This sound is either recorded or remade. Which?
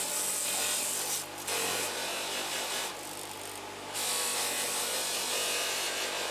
recorded